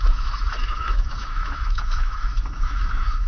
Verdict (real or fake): fake